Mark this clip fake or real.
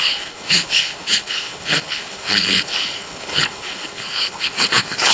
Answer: fake